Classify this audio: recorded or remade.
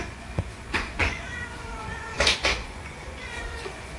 remade